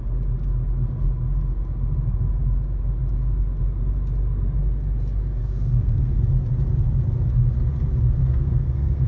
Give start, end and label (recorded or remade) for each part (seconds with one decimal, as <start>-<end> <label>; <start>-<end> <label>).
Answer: 0.0-5.4 recorded; 5.4-6.2 remade; 6.2-8.2 recorded; 8.2-9.1 remade